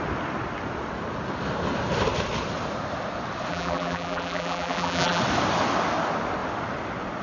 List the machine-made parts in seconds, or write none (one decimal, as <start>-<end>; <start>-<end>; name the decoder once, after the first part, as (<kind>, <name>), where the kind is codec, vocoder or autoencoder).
3.5-5.2 (vocoder, BigVGAN v2)